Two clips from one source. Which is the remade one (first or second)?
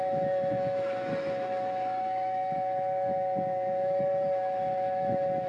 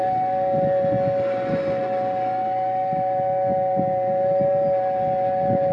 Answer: first